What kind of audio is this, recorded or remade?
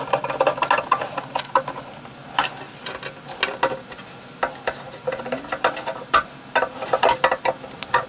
recorded